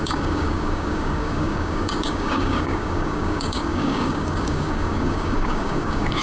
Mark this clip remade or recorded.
remade